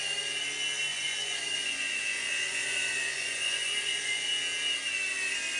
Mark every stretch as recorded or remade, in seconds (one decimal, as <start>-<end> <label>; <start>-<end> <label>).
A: 0.0-0.9 recorded; 0.9-4.3 remade; 4.3-5.6 recorded